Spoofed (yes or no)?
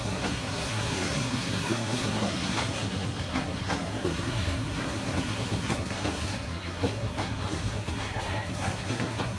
yes